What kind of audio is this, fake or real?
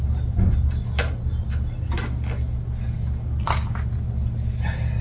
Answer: real